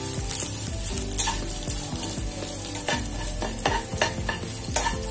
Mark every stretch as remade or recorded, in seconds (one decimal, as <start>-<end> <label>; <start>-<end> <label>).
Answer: 0.0-5.1 recorded